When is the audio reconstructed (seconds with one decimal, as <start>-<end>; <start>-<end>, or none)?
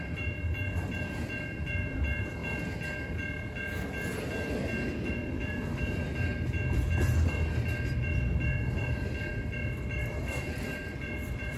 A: 0.0-2.4; 5.1-6.3; 8.7-9.3; 10.0-11.6